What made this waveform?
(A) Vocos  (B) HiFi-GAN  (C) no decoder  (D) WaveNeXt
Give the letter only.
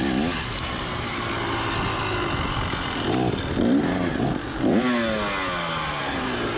C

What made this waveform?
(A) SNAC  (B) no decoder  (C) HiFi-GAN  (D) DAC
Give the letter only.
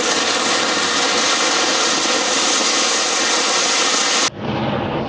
B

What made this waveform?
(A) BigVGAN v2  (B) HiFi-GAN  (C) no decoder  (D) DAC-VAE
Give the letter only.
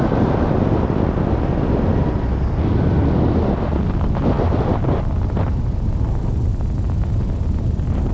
C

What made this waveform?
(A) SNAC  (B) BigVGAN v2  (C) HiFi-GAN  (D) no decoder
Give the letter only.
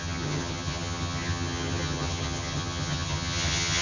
C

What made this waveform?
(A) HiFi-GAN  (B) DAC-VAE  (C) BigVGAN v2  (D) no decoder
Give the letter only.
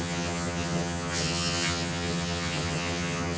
A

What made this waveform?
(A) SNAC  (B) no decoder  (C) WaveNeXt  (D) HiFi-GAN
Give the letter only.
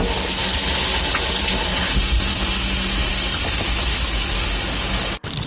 B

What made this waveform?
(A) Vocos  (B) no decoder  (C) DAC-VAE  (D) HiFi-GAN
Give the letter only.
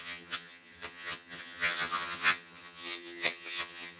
D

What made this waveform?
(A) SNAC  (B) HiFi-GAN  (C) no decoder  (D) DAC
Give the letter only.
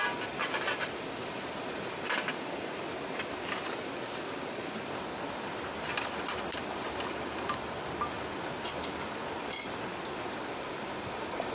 C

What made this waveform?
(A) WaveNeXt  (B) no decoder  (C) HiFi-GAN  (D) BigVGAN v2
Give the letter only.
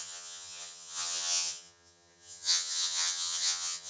C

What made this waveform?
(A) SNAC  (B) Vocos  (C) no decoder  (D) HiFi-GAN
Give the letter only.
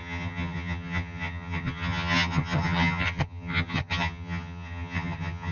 D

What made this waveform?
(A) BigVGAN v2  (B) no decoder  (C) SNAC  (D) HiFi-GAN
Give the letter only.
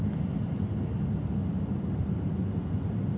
B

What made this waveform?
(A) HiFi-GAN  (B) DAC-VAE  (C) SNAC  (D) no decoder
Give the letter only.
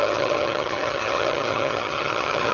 A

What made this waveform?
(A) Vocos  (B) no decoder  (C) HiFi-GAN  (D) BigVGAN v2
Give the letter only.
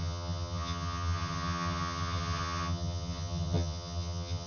C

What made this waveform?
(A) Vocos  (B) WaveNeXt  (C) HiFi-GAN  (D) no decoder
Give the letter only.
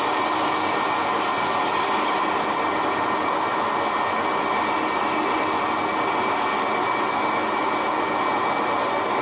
D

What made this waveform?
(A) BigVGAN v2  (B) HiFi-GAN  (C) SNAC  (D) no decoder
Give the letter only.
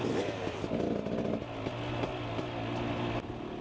D